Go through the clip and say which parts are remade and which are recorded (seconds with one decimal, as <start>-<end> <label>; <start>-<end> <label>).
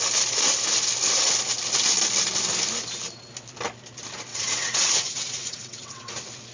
0.0-4.3 recorded; 4.3-6.1 remade; 6.1-6.5 recorded